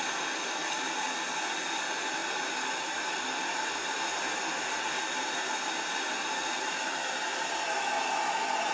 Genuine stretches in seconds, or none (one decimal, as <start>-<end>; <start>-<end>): 0.0-8.7